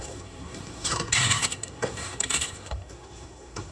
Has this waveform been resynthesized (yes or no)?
yes